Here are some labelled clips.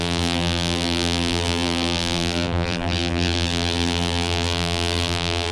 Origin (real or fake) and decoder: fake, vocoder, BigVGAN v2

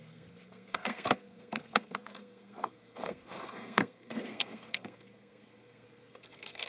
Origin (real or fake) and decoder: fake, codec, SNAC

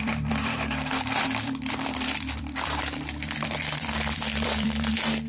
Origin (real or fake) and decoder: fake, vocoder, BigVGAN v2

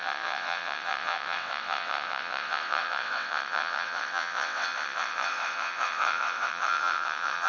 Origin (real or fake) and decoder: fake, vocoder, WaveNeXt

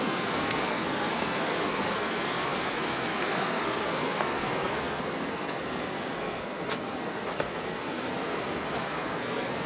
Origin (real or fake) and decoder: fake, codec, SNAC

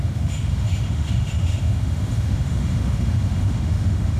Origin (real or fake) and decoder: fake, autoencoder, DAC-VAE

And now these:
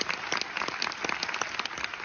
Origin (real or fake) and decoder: real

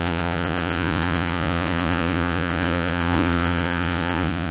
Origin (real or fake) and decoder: fake, vocoder, Vocos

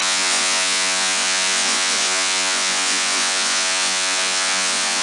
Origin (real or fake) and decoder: fake, vocoder, Vocos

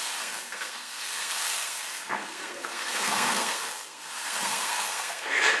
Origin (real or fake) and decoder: fake, codec, SNAC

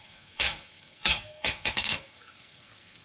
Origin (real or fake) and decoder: fake, codec, SNAC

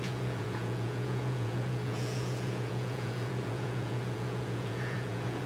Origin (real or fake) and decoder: fake, vocoder, Vocos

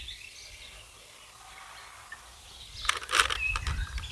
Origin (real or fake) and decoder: fake, vocoder, BigVGAN v2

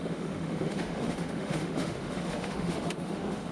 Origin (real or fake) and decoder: fake, autoencoder, DAC-VAE